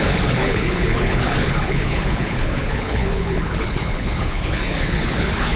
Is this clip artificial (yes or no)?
yes